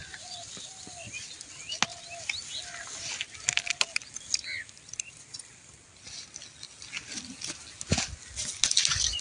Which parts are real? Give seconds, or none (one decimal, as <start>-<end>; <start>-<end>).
0.0-9.2